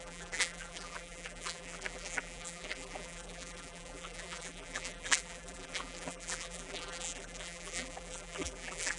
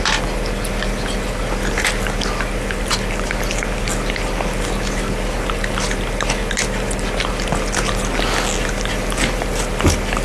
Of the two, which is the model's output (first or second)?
first